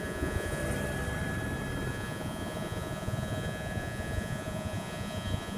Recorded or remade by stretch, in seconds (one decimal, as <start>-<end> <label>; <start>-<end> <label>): 0.0-0.6 remade; 0.6-1.9 recorded; 1.9-5.6 remade